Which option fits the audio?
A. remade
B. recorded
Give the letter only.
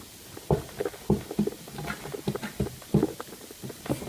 B